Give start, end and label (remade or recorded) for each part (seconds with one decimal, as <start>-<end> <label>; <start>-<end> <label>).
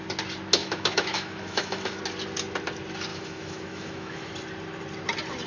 0.0-0.6 recorded; 0.6-2.0 remade; 2.0-3.1 recorded; 3.1-4.3 remade; 4.3-5.5 recorded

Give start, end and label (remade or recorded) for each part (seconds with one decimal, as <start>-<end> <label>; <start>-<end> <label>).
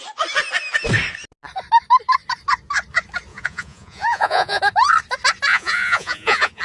0.0-3.3 recorded; 3.3-4.6 remade; 4.6-5.5 recorded; 5.5-6.6 remade